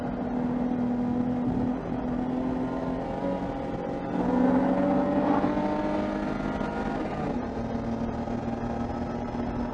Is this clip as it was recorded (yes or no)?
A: yes